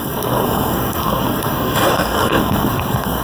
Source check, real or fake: fake